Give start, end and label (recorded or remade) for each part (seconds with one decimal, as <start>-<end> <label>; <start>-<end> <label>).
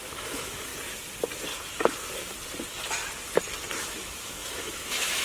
0.0-0.7 remade; 0.7-3.8 recorded; 3.8-5.2 remade